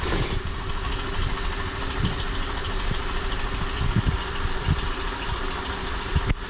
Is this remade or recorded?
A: remade